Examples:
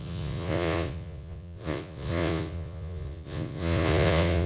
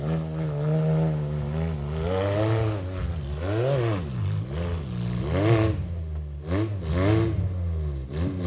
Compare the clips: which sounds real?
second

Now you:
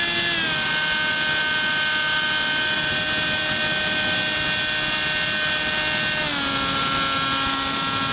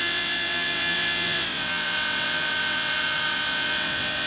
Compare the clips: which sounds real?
first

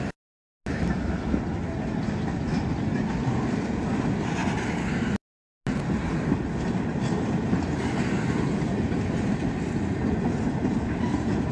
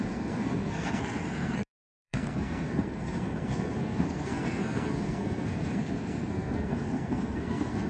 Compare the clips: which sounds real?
first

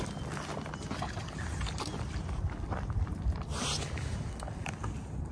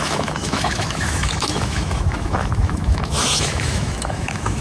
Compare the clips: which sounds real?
first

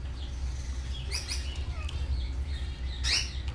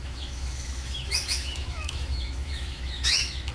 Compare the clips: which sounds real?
first